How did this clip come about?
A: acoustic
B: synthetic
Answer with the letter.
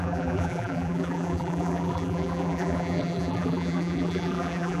B